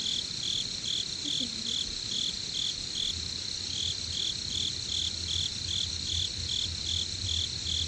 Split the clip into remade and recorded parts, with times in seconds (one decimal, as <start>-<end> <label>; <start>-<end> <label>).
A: 0.0-7.9 recorded